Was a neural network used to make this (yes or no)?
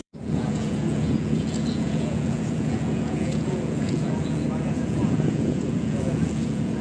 yes